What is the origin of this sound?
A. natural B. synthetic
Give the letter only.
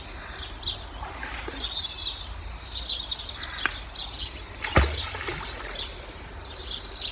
A